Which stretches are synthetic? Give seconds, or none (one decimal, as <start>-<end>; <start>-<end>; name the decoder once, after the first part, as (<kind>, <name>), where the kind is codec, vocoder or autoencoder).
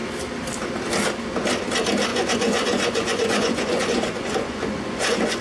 2.1-5.4 (vocoder, Vocos)